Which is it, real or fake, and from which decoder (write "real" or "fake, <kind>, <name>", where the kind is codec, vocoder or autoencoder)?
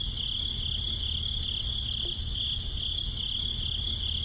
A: real